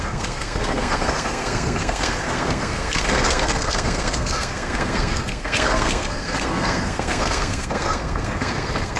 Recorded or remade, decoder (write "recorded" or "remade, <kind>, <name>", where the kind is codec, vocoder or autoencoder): remade, codec, SNAC